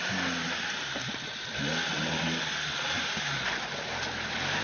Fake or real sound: real